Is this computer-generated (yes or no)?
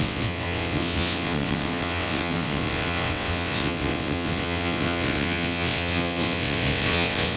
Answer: yes